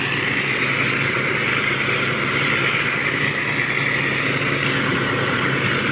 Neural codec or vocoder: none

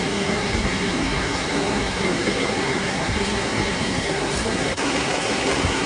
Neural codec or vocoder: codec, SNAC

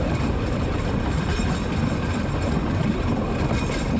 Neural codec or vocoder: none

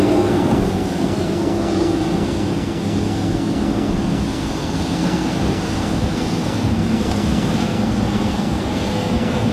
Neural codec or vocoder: codec, SNAC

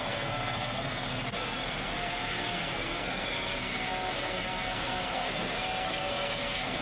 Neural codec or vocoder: codec, SNAC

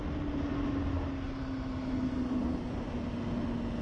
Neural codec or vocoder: none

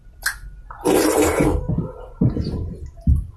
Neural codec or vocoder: none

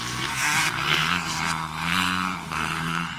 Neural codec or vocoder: codec, SNAC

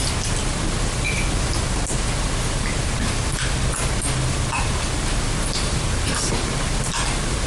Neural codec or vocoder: none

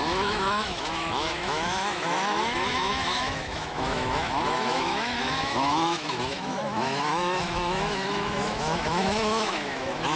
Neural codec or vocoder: autoencoder, DAC-VAE